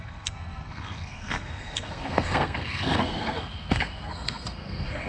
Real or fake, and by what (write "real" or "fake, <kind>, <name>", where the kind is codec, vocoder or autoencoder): fake, codec, SNAC